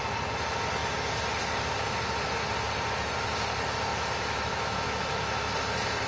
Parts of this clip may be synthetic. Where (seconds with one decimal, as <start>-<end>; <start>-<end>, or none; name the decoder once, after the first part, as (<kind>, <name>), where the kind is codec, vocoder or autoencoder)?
3.9-5.5 (autoencoder, DAC-VAE)